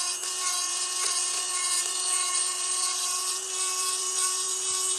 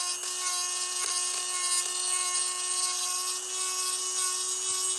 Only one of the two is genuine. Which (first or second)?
second